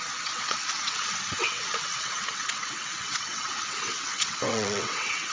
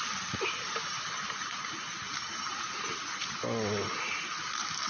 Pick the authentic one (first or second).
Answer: second